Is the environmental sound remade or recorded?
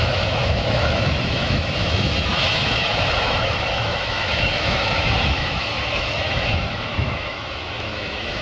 remade